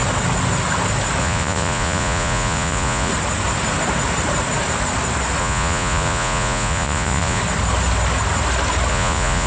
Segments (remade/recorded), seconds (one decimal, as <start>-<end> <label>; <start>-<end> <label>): 0.0-1.2 recorded; 1.2-3.1 remade; 3.1-5.4 recorded; 5.4-7.4 remade; 7.4-8.9 recorded; 8.9-9.5 remade